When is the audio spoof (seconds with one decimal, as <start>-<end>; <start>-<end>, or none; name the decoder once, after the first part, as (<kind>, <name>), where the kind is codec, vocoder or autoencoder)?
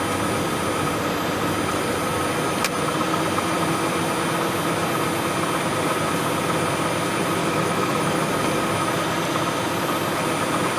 7.4-8.2 (autoencoder, DAC-VAE)